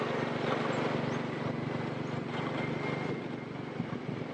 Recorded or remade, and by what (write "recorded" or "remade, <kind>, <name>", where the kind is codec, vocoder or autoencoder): recorded